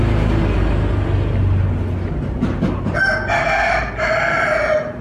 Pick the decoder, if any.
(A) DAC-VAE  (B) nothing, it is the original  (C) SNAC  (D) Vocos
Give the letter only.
B